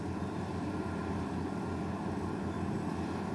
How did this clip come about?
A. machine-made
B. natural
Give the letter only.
B